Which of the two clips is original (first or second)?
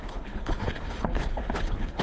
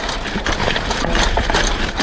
second